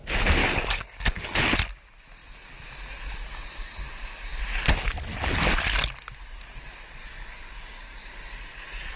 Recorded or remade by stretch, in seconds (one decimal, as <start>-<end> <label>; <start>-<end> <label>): 0.0-0.4 recorded; 0.4-1.4 remade; 1.4-7.0 recorded; 7.0-8.4 remade; 8.4-9.0 recorded